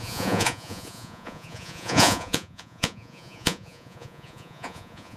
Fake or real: fake